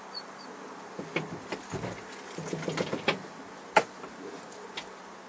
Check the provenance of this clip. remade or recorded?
recorded